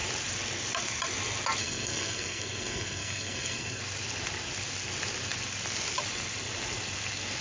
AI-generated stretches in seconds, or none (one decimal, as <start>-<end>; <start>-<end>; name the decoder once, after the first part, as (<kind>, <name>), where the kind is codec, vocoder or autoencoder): 1.6-3.8 (codec, SNAC)